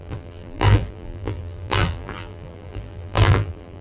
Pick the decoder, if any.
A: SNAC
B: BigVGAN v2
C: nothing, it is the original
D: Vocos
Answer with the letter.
B